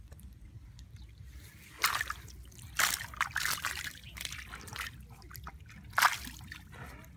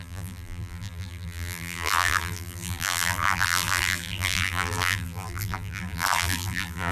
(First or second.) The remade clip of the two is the second